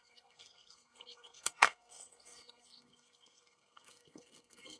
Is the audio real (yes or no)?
no